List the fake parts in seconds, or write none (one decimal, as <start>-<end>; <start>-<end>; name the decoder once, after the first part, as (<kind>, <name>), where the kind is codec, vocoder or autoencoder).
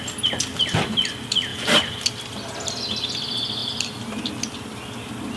none